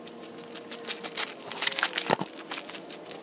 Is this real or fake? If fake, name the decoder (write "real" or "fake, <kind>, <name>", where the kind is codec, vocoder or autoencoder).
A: real